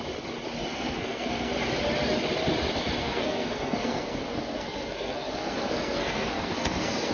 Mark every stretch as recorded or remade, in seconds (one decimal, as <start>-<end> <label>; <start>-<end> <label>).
0.0-0.7 recorded; 0.7-1.5 remade; 1.5-3.0 recorded; 3.0-7.1 remade